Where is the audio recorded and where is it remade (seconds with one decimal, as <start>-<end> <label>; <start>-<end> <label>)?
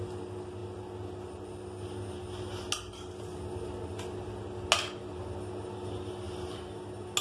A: 0.0-7.2 recorded